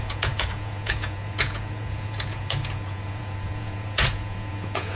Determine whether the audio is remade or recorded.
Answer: remade